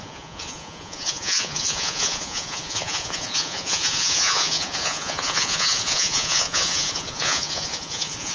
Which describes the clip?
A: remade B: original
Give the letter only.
A